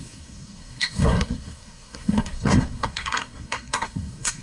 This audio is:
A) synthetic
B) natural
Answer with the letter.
A